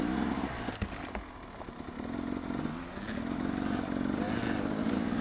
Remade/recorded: recorded